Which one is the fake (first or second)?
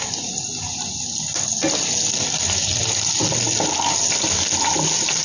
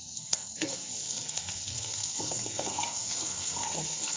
second